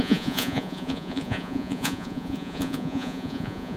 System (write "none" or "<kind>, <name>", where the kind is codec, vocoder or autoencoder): vocoder, Vocos